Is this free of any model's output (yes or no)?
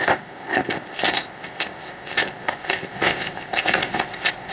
no